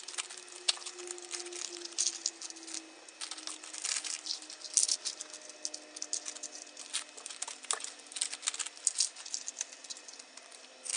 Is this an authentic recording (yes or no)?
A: yes